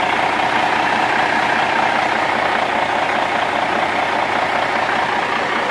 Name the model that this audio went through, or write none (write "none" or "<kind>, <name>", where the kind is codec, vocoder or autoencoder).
none